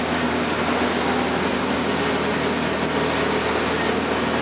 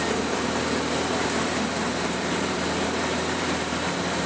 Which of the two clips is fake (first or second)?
second